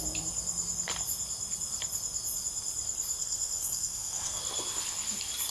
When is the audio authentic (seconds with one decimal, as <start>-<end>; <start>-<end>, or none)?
0.0-3.2; 4.4-5.5